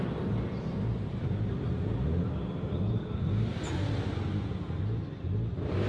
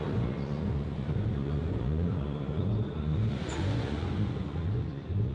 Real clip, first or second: first